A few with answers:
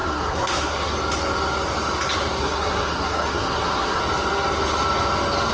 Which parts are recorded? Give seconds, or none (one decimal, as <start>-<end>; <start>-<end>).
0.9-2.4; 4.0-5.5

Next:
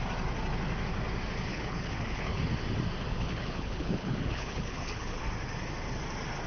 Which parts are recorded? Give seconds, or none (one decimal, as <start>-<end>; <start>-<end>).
0.0-1.5; 2.4-3.1; 5.2-6.5

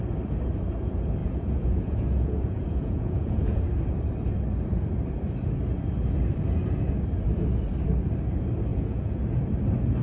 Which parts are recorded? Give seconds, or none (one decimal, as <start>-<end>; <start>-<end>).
0.0-1.2; 3.6-8.7; 9.2-10.0

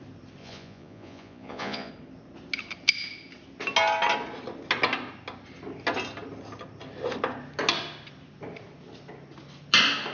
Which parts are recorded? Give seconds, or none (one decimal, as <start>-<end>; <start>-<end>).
0.0-0.4; 1.9-10.1

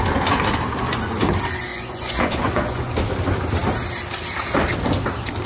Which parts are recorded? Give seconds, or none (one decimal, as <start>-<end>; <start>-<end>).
0.0-1.7; 2.9-5.5